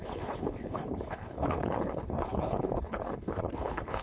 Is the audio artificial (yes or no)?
yes